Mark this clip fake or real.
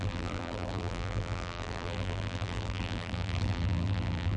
fake